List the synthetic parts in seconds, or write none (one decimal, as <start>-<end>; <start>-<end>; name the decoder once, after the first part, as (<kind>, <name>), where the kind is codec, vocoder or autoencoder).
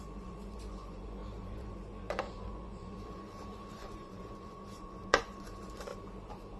0.0-5.9 (vocoder, Vocos)